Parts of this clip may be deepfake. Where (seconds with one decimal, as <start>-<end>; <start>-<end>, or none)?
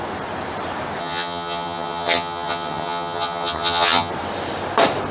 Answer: 1.0-4.1